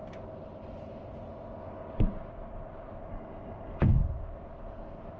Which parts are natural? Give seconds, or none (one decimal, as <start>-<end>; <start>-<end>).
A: 0.0-3.1; 4.0-5.2